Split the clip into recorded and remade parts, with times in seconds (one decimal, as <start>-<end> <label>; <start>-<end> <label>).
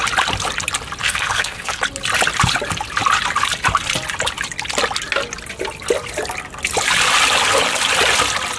0.0-1.0 recorded; 1.0-1.8 remade; 1.8-8.6 recorded